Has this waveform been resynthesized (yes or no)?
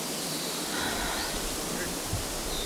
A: no